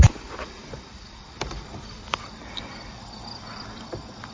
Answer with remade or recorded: remade